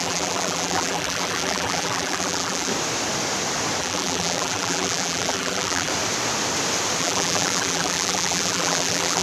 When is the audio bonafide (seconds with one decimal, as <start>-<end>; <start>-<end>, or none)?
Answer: 2.7-3.8; 5.9-7.0